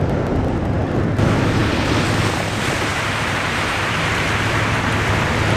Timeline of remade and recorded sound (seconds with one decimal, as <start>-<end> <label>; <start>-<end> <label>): 0.0-2.9 recorded; 2.9-4.8 remade; 4.8-5.6 recorded